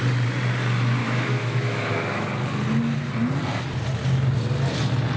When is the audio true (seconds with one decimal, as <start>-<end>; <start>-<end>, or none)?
0.0-1.0; 2.3-5.2